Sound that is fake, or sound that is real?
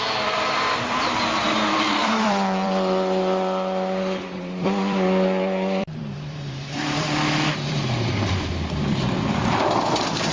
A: fake